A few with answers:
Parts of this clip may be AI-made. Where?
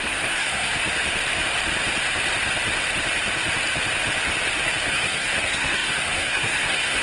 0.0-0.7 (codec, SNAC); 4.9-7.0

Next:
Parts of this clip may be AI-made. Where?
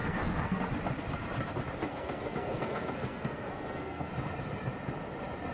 0.0-0.6 (codec, SNAC); 1.9-4.1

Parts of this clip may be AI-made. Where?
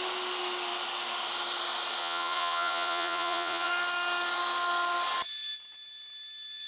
2.0-3.7 (vocoder, Vocos)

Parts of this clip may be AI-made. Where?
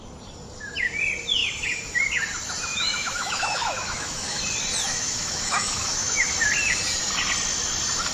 2.7-4.4 (autoencoder, DAC-VAE); 4.9-6.3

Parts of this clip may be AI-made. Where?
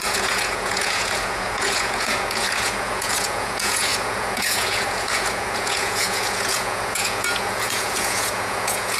0.0-9.0 (vocoder, Vocos)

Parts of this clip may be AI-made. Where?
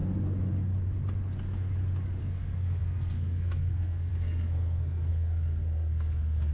2.2-6.5 (codec, SNAC)